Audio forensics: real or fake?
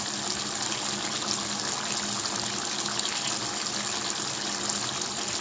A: real